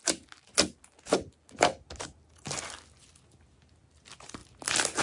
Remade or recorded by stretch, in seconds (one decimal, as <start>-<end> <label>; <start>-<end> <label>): 0.0-5.0 recorded